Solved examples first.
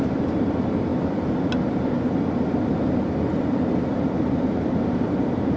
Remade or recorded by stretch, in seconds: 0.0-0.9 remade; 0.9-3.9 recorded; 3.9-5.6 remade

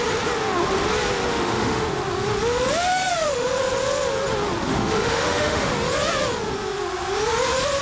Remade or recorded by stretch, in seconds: 0.0-1.3 recorded; 1.3-1.9 remade; 1.9-2.9 recorded; 2.9-3.6 remade; 3.6-4.7 recorded; 4.7-5.7 remade; 5.7-7.8 recorded